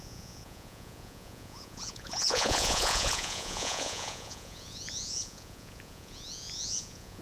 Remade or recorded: remade